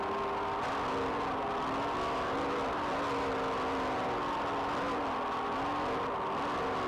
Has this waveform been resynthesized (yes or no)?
no